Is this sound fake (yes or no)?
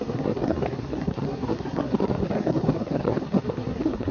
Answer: yes